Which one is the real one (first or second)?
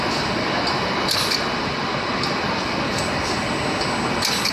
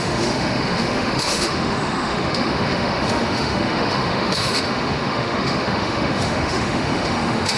first